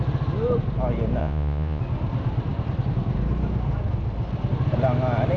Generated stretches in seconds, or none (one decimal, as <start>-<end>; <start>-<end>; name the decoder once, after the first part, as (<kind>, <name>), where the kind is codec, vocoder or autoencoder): 1.2-1.8 (vocoder, Vocos)